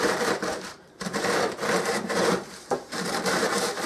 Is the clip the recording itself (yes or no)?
no